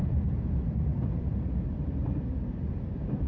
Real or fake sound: fake